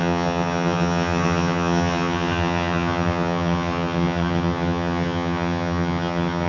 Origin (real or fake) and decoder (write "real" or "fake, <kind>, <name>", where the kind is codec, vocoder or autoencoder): fake, vocoder, HiFi-GAN